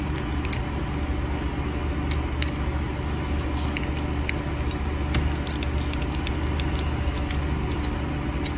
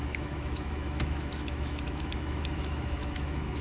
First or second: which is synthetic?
second